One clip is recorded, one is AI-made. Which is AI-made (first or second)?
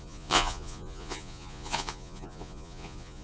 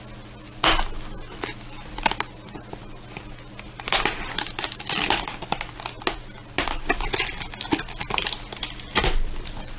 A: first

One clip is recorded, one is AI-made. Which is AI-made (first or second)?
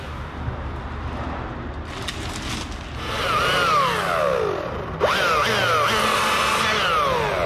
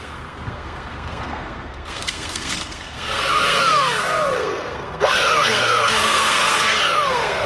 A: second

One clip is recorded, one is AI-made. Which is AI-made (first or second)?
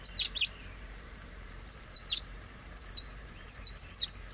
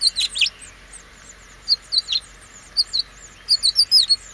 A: first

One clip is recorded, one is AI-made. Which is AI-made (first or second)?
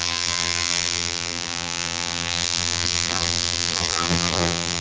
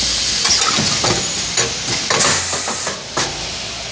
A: first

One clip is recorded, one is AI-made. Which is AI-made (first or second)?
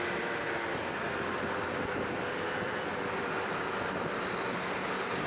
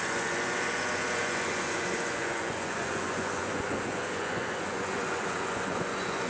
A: second